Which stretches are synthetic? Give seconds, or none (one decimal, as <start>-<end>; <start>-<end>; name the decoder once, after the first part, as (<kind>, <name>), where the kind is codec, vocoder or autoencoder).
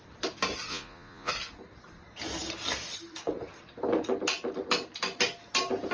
0.7-1.3 (vocoder, Vocos)